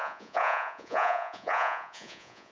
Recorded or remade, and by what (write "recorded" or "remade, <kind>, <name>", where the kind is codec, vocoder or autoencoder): remade, vocoder, Vocos